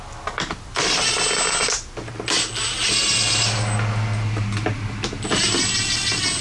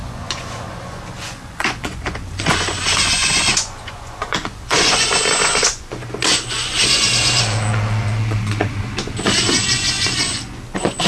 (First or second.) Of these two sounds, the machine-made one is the second